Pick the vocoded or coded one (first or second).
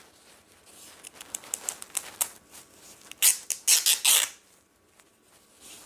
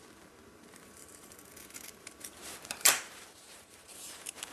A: second